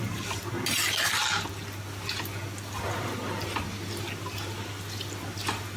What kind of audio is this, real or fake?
real